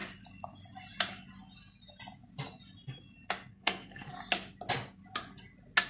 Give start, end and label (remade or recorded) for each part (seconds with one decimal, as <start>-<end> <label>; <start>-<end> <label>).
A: 0.0-3.5 recorded; 3.5-4.2 remade; 4.2-5.9 recorded